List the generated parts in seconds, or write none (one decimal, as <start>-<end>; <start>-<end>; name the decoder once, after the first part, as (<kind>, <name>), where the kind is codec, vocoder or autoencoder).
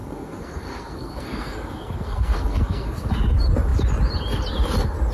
0.0-3.1 (codec, SNAC)